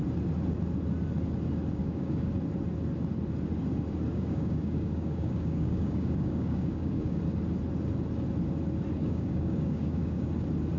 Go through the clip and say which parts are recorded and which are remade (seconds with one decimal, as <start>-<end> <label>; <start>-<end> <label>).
0.0-1.8 recorded; 1.8-2.3 remade; 2.3-4.1 recorded; 4.1-7.2 remade; 7.2-9.0 recorded; 9.0-10.3 remade; 10.3-10.8 recorded